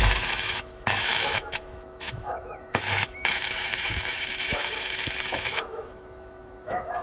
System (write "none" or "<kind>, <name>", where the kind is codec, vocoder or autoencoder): autoencoder, DAC-VAE